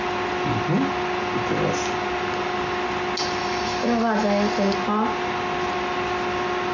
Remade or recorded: recorded